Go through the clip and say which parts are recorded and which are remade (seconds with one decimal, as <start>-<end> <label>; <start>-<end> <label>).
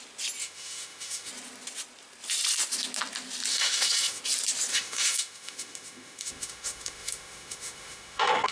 0.0-0.4 recorded; 0.4-1.3 remade; 1.3-3.5 recorded; 3.5-4.2 remade; 4.2-4.7 recorded; 4.7-8.5 remade